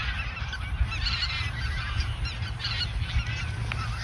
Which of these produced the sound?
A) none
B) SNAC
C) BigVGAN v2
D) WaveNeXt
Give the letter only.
A